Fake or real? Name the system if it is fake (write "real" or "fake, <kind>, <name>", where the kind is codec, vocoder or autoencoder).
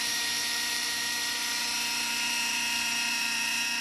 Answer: fake, vocoder, BigVGAN v2